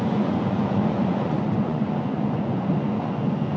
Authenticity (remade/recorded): remade